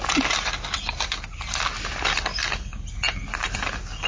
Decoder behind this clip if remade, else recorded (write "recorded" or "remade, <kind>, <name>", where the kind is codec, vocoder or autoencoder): recorded